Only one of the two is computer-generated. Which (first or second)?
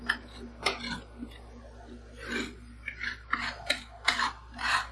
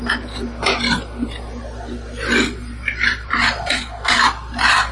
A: second